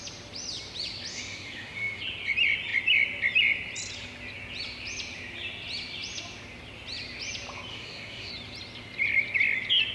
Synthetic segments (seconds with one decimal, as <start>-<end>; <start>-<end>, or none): 1.1-2.0; 7.7-8.3